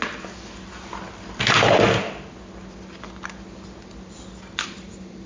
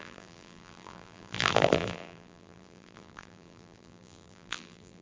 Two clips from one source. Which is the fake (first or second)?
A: second